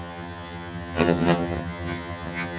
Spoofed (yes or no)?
yes